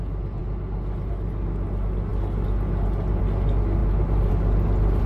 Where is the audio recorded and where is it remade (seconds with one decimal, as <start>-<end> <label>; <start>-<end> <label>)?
0.0-5.1 recorded